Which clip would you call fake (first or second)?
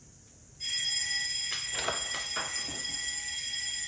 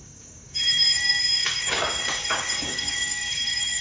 second